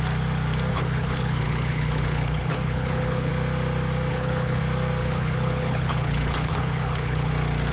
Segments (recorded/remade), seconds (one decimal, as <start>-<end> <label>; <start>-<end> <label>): 0.0-0.7 recorded; 0.7-3.3 remade; 3.3-4.1 recorded; 4.1-4.6 remade; 4.6-5.0 recorded; 5.0-7.3 remade; 7.3-7.7 recorded